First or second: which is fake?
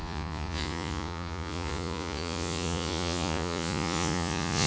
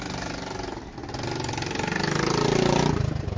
first